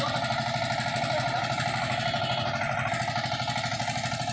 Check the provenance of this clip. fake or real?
real